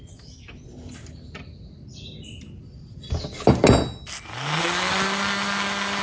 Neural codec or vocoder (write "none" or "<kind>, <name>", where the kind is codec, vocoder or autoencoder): none